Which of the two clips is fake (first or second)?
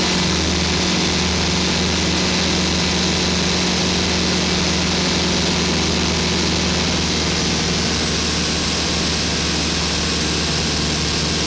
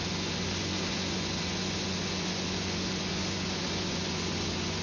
second